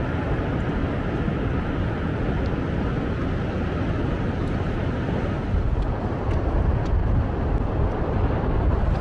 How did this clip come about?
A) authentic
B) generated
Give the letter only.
A